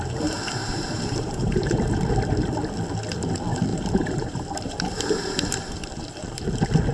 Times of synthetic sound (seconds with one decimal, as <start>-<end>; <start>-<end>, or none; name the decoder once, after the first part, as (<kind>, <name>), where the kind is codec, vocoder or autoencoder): 0.6-2.1 (vocoder, BigVGAN v2); 3.7-6.4